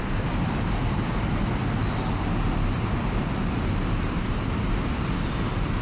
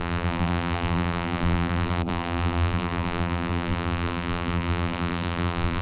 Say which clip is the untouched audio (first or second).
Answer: first